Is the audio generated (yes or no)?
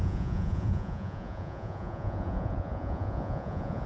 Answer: yes